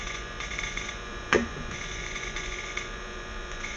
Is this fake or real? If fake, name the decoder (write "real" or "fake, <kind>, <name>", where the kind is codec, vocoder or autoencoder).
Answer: fake, vocoder, Vocos